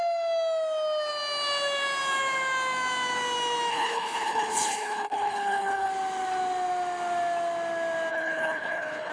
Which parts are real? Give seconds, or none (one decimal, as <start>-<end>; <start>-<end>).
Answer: 0.0-3.7; 5.9-8.1